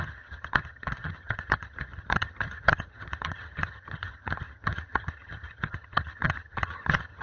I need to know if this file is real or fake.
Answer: fake